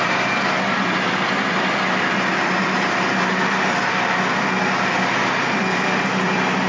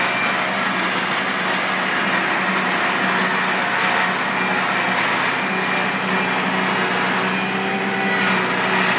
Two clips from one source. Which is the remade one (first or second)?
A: first